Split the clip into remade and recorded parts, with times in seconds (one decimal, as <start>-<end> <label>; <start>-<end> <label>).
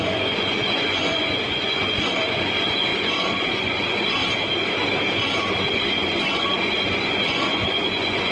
0.0-4.2 remade; 4.2-5.7 recorded; 5.7-8.3 remade